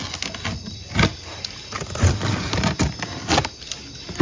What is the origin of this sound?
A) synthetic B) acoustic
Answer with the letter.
B